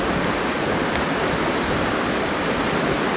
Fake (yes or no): no